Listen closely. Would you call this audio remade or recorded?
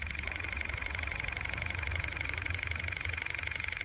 remade